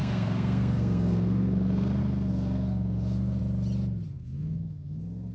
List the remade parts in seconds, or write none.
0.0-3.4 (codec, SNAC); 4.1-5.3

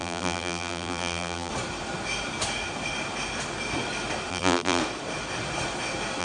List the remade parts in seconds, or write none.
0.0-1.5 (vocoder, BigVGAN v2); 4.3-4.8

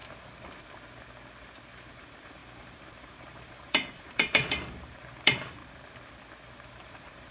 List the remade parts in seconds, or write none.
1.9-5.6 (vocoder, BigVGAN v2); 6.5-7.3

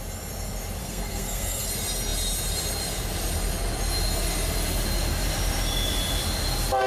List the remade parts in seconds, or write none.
0.8-1.7 (codec, SNAC)